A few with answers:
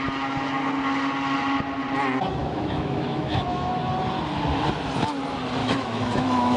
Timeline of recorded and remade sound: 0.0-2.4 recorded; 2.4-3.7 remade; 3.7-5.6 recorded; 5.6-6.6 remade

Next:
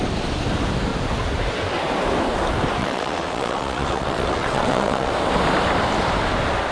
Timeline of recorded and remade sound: 0.0-2.8 recorded; 2.8-5.1 remade; 5.1-6.7 recorded